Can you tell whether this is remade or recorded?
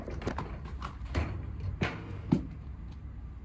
remade